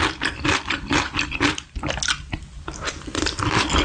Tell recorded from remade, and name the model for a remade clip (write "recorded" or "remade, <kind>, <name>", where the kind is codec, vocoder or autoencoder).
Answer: remade, vocoder, BigVGAN v2